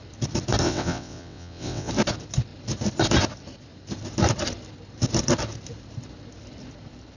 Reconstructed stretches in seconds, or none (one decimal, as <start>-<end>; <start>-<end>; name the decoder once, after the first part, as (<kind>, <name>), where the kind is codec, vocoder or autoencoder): 0.6-1.9 (vocoder, WaveNeXt)